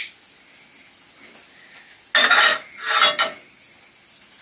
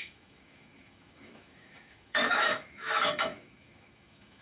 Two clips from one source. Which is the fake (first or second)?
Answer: second